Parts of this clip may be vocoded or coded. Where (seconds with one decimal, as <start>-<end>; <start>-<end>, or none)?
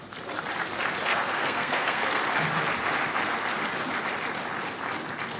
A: 1.1-2.2